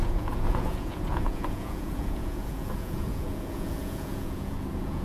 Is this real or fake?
fake